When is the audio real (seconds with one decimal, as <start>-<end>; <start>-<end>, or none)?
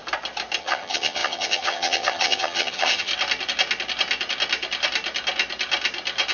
0.0-0.6; 3.1-6.3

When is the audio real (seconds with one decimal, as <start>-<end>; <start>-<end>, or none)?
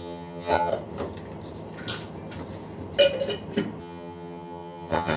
0.7-3.8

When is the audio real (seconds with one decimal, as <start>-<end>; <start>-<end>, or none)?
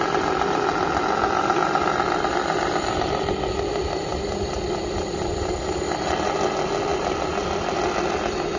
0.0-8.6